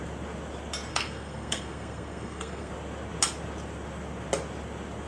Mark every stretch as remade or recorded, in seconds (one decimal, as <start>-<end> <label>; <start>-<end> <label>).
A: 0.0-0.9 recorded; 0.9-2.7 remade; 2.7-5.1 recorded